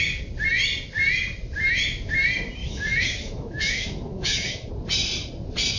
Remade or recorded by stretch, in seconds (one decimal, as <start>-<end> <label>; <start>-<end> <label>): 0.0-2.6 recorded; 2.6-4.7 remade; 4.7-5.8 recorded